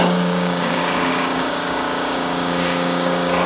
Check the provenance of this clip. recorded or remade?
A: remade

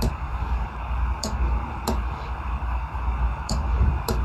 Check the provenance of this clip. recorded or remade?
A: remade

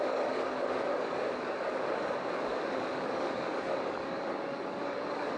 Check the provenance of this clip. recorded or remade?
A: remade